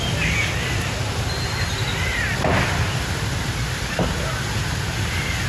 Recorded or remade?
recorded